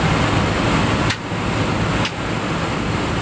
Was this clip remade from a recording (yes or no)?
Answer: no